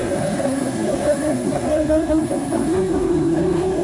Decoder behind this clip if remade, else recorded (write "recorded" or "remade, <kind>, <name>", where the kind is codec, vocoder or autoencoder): remade, codec, SNAC